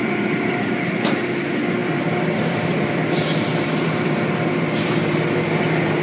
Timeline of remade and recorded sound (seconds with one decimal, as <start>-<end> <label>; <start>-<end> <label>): 0.0-6.0 remade